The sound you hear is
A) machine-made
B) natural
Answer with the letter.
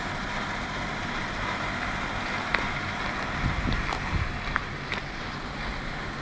B